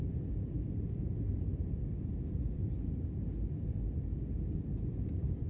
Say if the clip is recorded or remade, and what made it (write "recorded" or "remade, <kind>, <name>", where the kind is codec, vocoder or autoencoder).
recorded